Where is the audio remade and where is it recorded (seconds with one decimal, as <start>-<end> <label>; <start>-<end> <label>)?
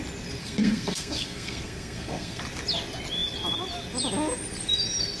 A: 0.0-0.4 recorded; 0.4-2.4 remade; 2.4-5.2 recorded